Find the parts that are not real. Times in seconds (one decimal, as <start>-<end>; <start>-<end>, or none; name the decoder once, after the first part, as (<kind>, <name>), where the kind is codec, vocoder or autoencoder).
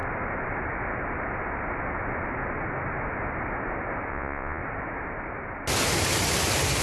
4.1-4.6 (vocoder, Vocos)